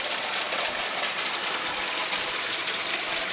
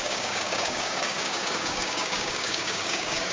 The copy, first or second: second